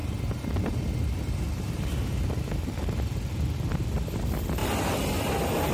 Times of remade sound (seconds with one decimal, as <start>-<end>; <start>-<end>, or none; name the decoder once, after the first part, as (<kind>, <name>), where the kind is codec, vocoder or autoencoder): none